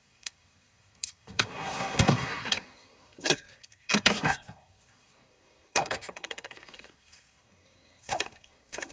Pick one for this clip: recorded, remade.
remade